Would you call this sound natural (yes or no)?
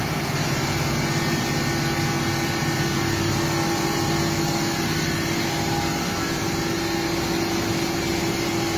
yes